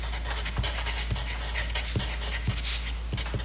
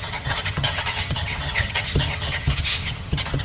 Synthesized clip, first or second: second